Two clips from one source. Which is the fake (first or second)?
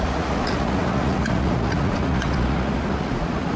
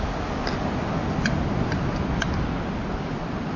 first